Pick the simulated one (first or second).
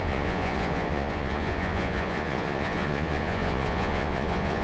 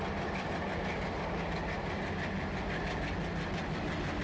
first